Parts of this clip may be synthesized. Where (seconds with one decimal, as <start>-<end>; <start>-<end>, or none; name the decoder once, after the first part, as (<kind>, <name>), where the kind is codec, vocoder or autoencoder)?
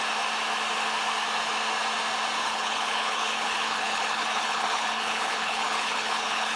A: 2.4-6.6 (codec, HILCodec)